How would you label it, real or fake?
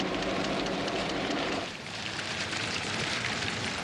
fake